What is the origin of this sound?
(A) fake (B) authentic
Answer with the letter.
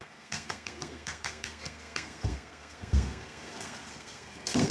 A